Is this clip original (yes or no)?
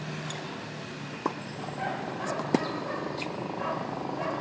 yes